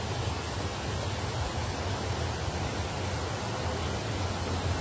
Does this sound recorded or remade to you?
recorded